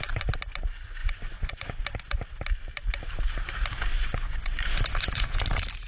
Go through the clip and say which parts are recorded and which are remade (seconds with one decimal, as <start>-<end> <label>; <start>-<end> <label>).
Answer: 0.0-1.0 recorded; 1.0-1.8 remade; 1.8-3.9 recorded; 3.9-5.4 remade; 5.4-5.9 recorded